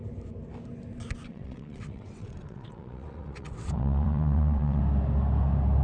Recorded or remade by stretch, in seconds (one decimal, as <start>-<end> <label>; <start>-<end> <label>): 0.0-1.3 recorded; 1.3-4.8 remade; 4.8-5.8 recorded